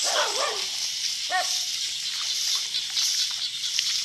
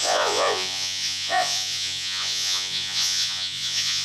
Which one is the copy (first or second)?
second